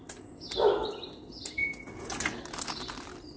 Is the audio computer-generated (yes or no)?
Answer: no